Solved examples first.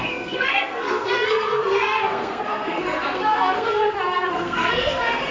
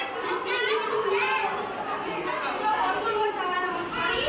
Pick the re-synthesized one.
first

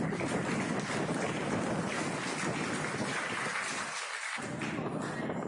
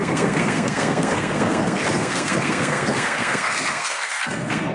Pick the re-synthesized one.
second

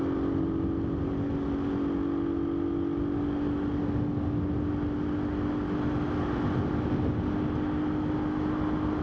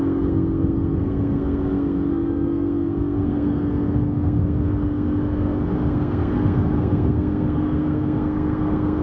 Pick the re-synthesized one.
second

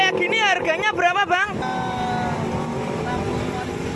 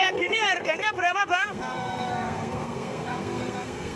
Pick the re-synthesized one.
second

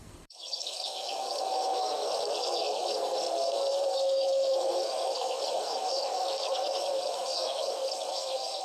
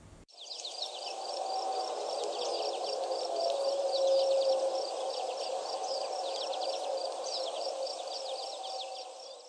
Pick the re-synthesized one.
first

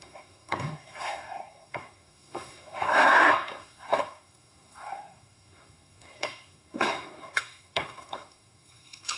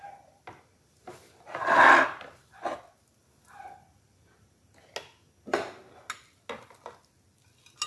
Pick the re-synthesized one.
first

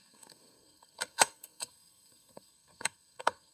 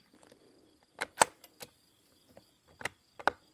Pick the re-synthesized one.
first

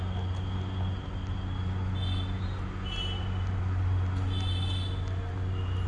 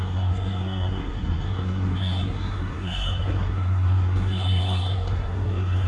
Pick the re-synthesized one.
second